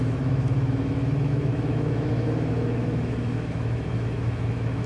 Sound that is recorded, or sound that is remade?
remade